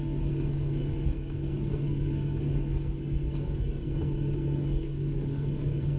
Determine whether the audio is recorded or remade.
remade